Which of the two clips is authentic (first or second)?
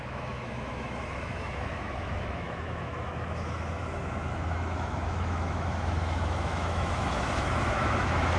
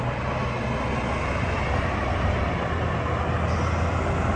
second